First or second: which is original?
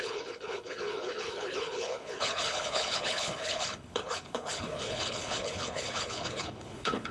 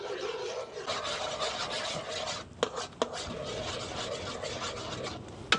second